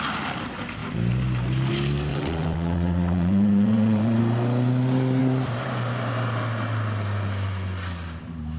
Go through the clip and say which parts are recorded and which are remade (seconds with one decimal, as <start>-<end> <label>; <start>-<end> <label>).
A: 0.0-2.1 recorded; 2.1-4.2 remade; 4.2-8.6 recorded